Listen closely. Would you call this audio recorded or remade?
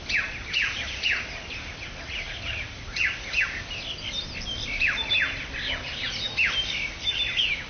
recorded